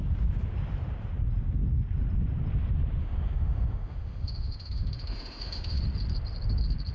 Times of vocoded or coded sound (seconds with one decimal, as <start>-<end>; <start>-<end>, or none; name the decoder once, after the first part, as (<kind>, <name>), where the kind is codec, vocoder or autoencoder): 3.0-5.8 (autoencoder, DAC-VAE)